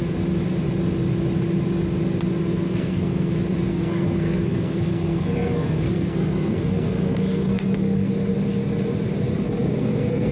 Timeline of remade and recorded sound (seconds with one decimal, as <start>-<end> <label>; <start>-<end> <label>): 0.0-2.4 recorded; 2.4-3.3 remade; 3.3-3.7 recorded; 3.7-8.1 remade; 8.1-9.3 recorded; 9.3-10.3 remade